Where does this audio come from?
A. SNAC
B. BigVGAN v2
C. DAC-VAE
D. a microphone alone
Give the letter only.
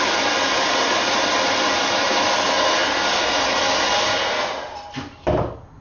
D